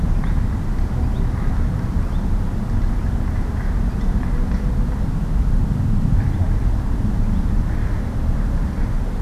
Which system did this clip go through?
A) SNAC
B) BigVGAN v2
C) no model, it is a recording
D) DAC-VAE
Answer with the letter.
C